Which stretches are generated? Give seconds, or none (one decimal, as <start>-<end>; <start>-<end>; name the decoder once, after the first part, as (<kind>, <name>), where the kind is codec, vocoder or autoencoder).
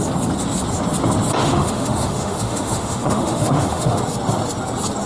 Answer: 1.4-4.0 (autoencoder, DAC-VAE)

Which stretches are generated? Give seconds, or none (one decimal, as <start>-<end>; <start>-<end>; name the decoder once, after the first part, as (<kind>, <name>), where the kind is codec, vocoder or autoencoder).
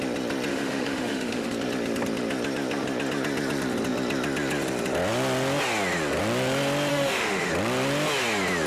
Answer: 0.5-1.5 (autoencoder, DAC-VAE); 6.9-7.5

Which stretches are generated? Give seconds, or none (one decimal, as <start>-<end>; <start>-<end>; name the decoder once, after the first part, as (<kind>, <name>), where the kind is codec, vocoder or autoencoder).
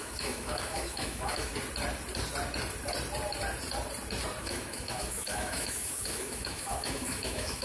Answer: 0.0-1.5 (autoencoder, DAC-VAE); 4.4-7.6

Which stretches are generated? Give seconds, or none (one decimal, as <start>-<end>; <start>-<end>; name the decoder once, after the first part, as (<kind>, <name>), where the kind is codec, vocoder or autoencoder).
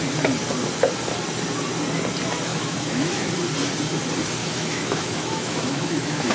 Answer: 2.5-3.3 (autoencoder, DAC-VAE); 4.4-6.3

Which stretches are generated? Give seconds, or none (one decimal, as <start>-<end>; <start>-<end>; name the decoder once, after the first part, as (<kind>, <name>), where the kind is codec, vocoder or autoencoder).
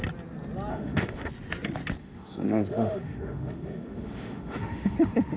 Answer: 0.7-1.3 (autoencoder, DAC-VAE); 2.0-5.4